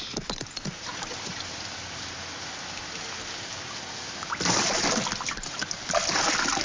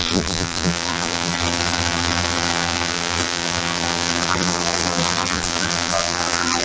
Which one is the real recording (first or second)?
first